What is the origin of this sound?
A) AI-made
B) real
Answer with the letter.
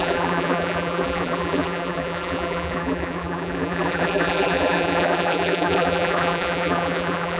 A